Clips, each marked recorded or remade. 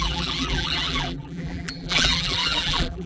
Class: remade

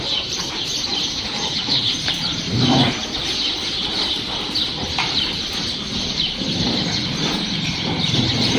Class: remade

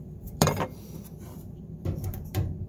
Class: remade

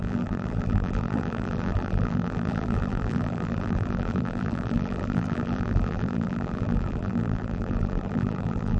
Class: remade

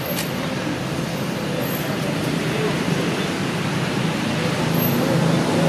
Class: recorded